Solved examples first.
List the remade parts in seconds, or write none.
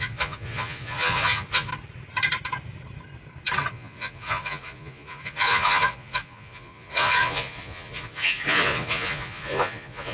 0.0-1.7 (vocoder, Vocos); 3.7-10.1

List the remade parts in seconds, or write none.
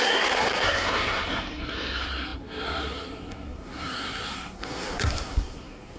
0.0-6.0 (codec, SNAC)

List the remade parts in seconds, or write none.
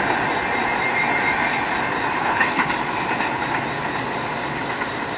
2.2-2.7 (codec, HILCodec)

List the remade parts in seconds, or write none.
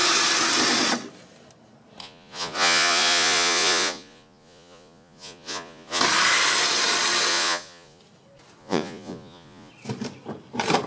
2.0-6.0 (vocoder, Vocos); 7.3-8.0; 8.6-9.7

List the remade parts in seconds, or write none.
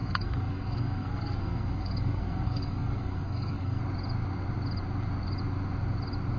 0.0-3.8 (codec, SNAC)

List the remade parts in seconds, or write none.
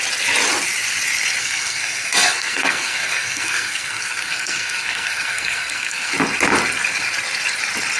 1.4-6.1 (codec, SNAC)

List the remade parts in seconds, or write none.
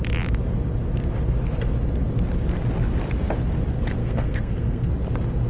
4.0-4.9 (codec, SNAC)